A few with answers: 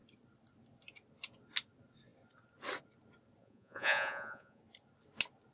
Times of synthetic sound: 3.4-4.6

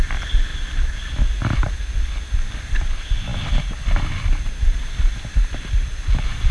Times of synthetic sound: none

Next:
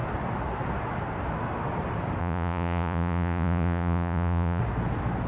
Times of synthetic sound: 2.2-4.6